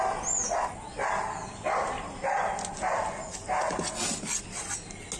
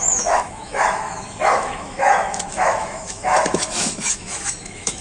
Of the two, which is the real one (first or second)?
first